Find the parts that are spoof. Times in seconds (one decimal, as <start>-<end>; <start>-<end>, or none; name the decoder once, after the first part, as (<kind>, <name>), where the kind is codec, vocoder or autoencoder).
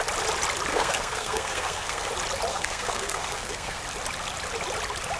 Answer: 0.7-2.1 (codec, SNAC); 2.5-3.8